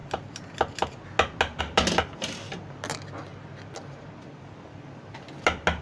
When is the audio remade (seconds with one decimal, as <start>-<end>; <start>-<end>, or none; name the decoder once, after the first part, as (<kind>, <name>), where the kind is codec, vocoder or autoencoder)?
none